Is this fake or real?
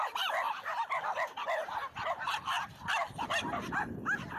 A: real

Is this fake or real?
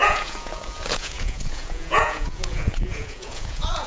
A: fake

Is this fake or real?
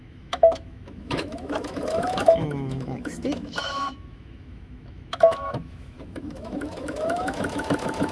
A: fake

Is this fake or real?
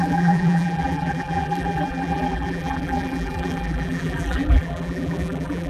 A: fake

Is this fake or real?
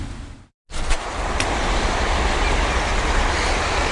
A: real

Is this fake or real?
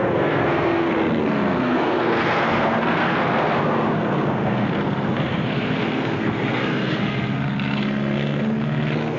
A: fake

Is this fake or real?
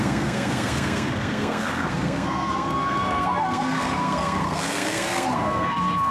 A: fake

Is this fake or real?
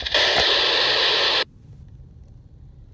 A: real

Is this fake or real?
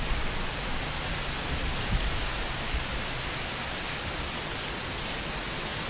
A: real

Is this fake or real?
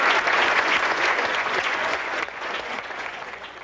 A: fake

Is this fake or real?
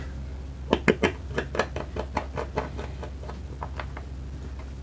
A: real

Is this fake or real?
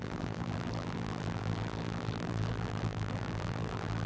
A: fake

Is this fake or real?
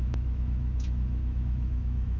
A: fake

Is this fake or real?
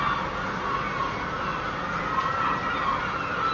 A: real